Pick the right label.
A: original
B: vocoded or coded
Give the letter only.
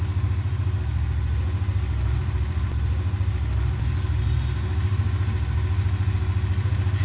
A